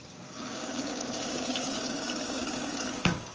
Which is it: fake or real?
fake